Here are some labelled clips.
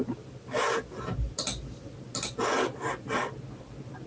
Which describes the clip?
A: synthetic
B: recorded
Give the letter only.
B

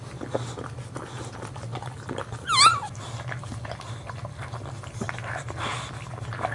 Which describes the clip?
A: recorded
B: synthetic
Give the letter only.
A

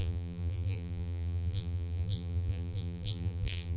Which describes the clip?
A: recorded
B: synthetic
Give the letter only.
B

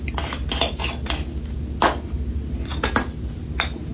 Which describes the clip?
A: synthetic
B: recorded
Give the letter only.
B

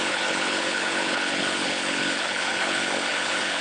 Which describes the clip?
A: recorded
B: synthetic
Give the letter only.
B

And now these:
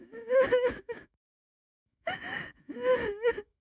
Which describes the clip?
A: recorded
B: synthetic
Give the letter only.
B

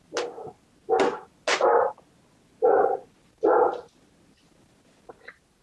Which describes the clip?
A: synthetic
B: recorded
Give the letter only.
B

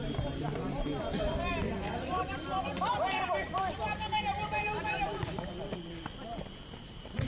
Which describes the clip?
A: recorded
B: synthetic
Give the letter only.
B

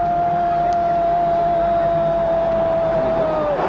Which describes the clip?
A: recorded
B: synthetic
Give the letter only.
A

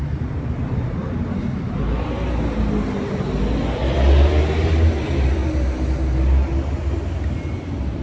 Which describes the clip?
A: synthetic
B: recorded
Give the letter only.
B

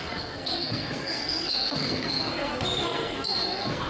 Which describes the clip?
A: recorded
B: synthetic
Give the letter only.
B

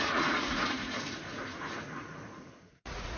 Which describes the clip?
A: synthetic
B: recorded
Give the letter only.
A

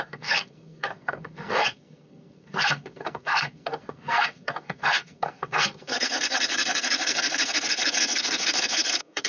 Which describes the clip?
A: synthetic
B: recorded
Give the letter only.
A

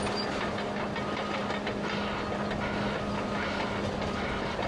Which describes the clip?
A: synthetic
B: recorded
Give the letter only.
B